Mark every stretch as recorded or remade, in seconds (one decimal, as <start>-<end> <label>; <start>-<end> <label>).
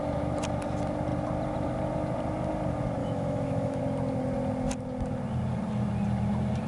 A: 0.0-3.0 recorded; 3.0-3.8 remade; 3.8-6.7 recorded